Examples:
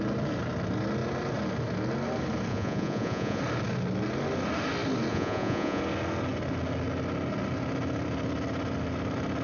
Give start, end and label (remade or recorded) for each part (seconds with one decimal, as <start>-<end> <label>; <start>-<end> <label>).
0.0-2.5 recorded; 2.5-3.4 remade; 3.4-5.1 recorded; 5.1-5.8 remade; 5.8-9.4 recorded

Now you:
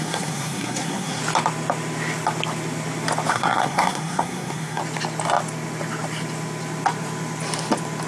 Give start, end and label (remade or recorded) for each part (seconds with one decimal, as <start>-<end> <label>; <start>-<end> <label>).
0.0-1.2 remade; 1.2-3.3 recorded; 3.3-4.8 remade; 4.8-8.1 recorded

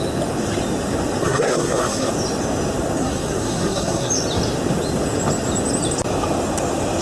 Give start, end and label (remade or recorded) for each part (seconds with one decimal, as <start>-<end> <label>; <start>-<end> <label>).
0.0-1.2 recorded; 1.2-2.1 remade; 2.1-3.0 recorded; 3.0-4.1 remade; 4.1-7.0 recorded

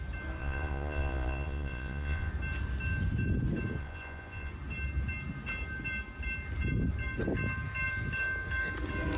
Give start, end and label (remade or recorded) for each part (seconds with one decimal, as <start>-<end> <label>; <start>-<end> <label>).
0.0-0.4 recorded; 0.4-2.3 remade; 2.3-3.8 recorded; 3.8-4.5 remade; 4.5-9.2 recorded

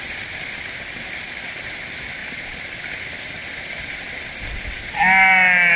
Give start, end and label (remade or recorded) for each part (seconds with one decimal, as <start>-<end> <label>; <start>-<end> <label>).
0.0-2.2 recorded; 2.2-2.8 remade; 2.8-5.8 recorded